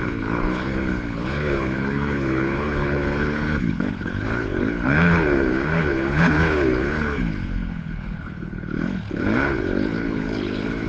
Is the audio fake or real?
fake